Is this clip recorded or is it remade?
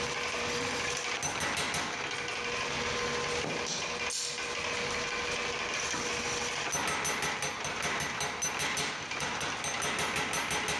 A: recorded